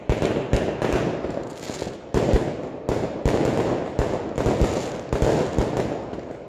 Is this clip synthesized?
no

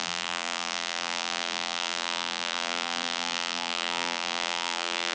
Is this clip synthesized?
yes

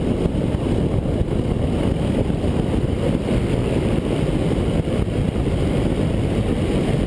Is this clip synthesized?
no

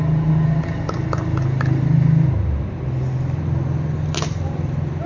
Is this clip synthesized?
no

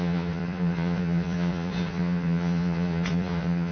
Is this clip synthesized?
yes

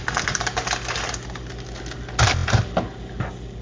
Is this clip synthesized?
no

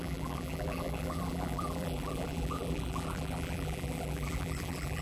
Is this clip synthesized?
yes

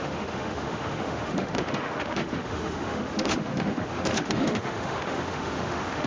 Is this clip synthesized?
yes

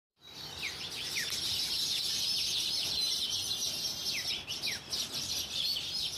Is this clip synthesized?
no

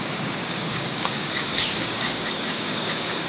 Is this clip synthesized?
yes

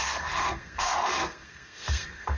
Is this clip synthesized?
yes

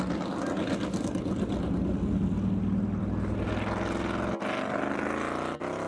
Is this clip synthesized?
no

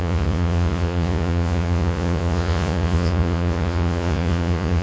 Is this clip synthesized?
yes